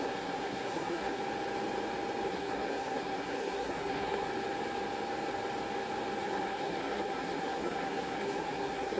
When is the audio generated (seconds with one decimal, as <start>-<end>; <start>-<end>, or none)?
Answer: 0.0-1.2; 2.3-4.3; 6.2-9.0